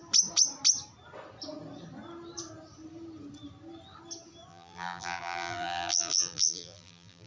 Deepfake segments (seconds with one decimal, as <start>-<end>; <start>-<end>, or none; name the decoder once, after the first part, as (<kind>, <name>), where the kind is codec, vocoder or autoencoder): 4.5-7.3 (vocoder, BigVGAN v2)

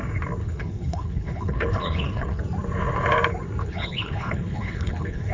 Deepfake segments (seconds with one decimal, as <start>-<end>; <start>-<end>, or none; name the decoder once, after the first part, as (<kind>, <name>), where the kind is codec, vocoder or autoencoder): 0.4-2.4 (codec, HILCodec); 3.6-5.3

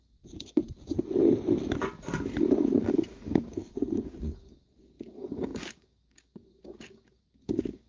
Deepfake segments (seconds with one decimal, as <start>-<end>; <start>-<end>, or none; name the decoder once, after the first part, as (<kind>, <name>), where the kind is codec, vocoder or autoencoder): 0.0-0.6 (codec, DAC); 2.8-7.9